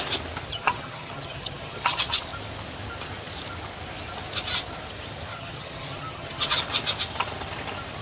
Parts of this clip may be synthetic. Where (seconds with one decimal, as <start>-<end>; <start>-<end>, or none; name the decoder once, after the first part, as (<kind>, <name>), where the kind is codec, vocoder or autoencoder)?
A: 0.5-2.2 (vocoder, HiFi-GAN); 5.3-6.6